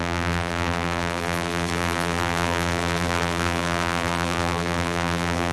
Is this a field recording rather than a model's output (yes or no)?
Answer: no